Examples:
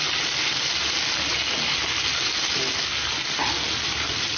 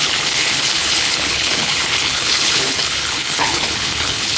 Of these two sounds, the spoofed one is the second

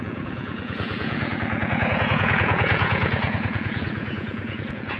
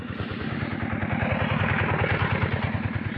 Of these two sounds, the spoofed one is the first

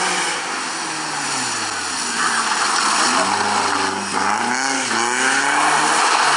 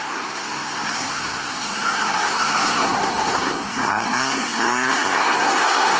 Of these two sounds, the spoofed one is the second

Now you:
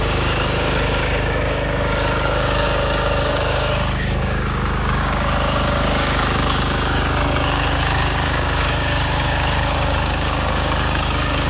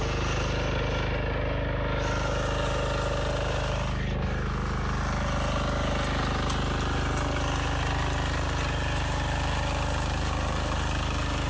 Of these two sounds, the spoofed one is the first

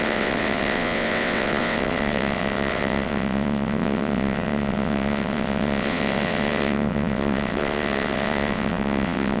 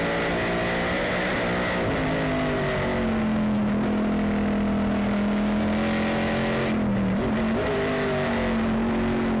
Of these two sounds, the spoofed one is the first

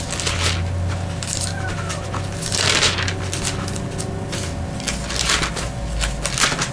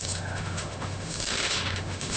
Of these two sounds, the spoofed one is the second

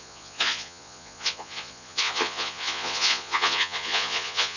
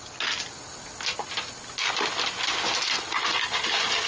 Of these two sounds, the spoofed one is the first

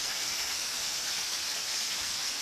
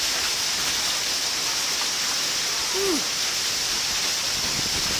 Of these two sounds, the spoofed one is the first